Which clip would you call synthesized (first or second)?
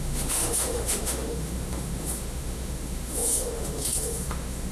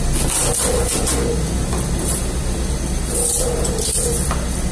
first